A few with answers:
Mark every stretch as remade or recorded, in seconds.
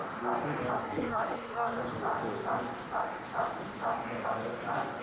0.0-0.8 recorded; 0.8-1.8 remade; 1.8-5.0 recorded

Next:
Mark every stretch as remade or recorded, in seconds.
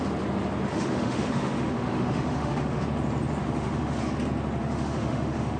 0.0-0.7 recorded; 0.7-2.8 remade; 2.8-3.4 recorded; 3.4-4.1 remade; 4.1-4.6 recorded; 4.6-5.6 remade